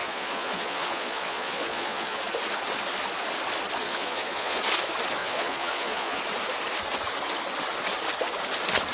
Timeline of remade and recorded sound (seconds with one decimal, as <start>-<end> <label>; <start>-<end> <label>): 0.0-2.2 remade; 2.2-3.8 recorded; 3.8-4.6 remade; 4.6-5.2 recorded; 5.2-6.2 remade; 6.2-8.9 recorded